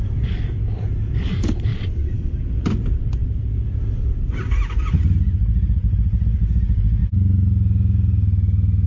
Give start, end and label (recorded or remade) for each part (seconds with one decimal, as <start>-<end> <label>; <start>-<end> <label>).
0.0-1.7 recorded; 1.7-2.3 remade; 2.3-8.9 recorded